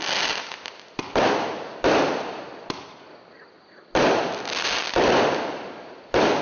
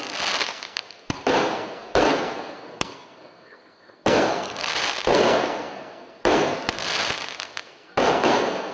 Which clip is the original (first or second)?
first